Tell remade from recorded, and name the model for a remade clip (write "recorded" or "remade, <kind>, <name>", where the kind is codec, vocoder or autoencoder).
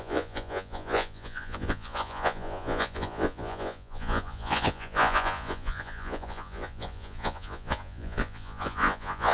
remade, vocoder, Vocos